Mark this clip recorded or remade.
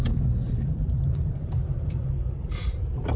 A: remade